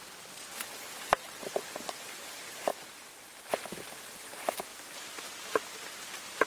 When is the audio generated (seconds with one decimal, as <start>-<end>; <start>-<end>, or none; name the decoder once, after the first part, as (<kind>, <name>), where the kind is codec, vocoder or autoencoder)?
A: none